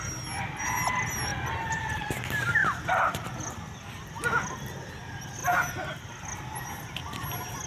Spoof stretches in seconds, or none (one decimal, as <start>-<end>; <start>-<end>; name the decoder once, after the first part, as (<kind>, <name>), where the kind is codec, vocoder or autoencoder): 2.6-4.5 (vocoder, BigVGAN v2)